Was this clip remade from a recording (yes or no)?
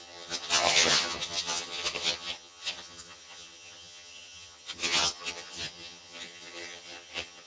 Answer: yes